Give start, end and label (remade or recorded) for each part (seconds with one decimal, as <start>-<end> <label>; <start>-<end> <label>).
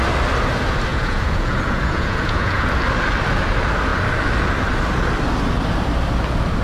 0.0-0.9 recorded; 0.9-2.7 remade; 2.7-6.6 recorded